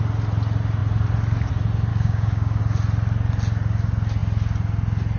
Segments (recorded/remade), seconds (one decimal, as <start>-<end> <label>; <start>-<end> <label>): 0.0-1.9 recorded; 1.9-2.6 remade; 2.6-5.2 recorded

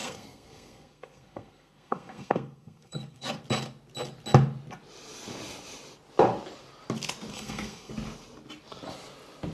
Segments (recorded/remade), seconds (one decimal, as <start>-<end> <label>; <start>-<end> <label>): 0.0-3.4 remade; 3.4-7.3 recorded; 7.3-7.9 remade; 7.9-9.5 recorded

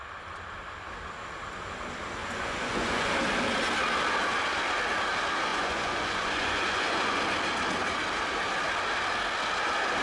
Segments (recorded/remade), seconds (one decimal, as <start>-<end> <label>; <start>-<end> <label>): 0.0-2.2 recorded; 2.2-3.1 remade; 3.1-5.5 recorded; 5.5-7.2 remade; 7.2-10.0 recorded

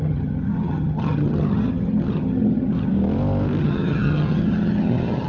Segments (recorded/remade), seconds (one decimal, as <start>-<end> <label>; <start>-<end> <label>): 0.0-2.9 remade; 2.9-3.6 recorded; 3.6-5.3 remade